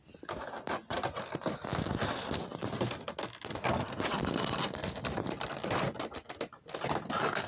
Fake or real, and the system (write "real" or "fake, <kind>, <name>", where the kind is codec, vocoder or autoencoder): real